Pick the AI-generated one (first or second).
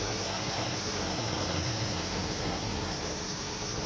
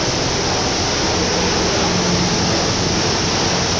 first